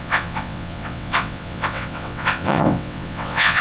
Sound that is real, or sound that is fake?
fake